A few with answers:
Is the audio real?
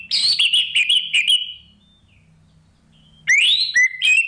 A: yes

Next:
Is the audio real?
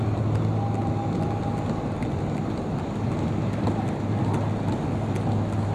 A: yes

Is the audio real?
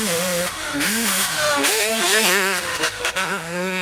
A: no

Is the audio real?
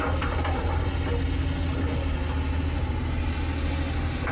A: yes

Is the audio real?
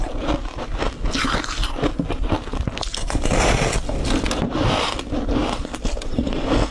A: yes